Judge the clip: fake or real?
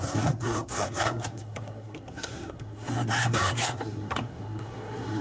fake